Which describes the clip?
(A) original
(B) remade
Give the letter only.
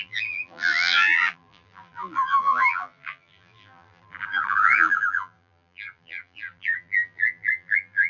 B